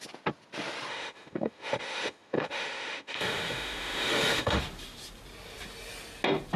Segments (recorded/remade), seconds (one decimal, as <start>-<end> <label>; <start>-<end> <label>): 0.0-0.9 recorded; 0.9-4.6 remade; 4.6-6.6 recorded